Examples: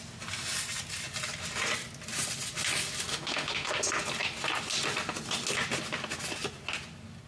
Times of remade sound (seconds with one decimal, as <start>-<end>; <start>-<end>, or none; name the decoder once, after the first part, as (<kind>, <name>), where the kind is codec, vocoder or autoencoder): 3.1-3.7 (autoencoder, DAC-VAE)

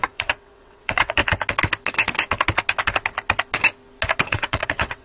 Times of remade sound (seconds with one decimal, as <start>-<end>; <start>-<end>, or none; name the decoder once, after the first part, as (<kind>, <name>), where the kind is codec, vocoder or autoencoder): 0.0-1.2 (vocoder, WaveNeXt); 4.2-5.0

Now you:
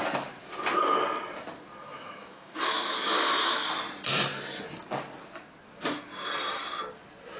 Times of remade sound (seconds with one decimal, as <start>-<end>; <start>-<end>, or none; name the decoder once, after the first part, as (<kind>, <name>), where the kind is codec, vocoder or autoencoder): 1.8-3.7 (autoencoder, DAC-VAE)

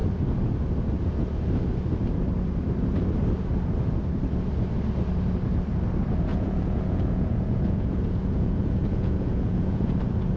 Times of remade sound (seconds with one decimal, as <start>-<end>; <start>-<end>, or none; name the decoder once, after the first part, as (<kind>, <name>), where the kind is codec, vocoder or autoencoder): 6.3-9.9 (vocoder, Vocos)

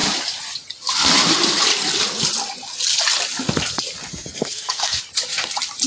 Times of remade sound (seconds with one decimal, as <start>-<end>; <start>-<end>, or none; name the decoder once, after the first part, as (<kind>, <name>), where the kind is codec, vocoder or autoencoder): 4.4-5.0 (codec, SNAC)